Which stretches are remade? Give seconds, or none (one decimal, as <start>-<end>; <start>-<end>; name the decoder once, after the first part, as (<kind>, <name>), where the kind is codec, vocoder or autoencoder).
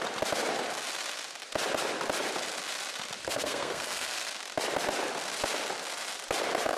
3.2-4.3 (codec, SNAC)